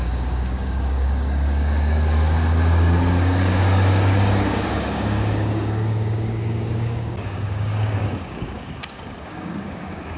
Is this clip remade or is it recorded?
remade